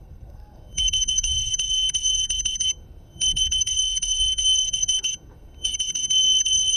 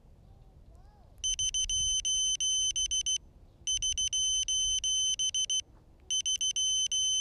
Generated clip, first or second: first